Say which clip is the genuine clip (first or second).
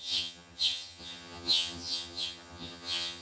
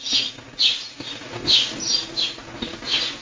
second